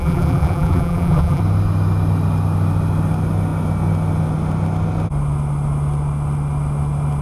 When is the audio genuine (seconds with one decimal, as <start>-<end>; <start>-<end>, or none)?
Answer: 1.4-7.2